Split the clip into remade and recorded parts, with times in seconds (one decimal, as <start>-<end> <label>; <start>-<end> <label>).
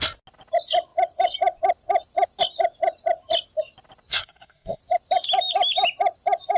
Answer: 0.0-4.1 recorded; 4.1-4.8 remade; 4.8-6.6 recorded